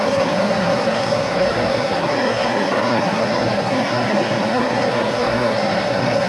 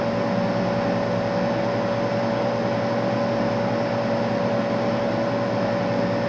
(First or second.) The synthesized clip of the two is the first